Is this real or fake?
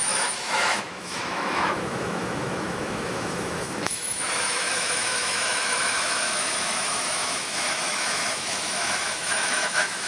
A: fake